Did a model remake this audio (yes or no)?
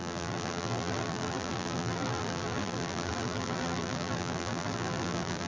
yes